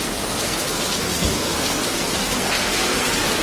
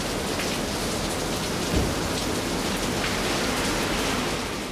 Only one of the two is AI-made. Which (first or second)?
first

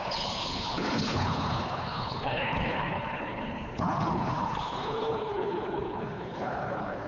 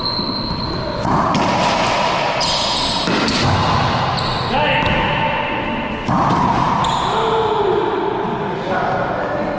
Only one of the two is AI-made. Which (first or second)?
first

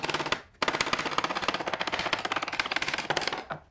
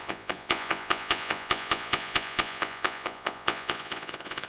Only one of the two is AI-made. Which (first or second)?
second